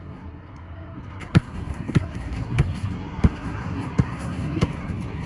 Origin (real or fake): fake